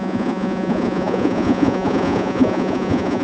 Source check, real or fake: fake